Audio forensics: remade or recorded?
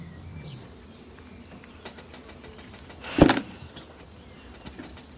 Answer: recorded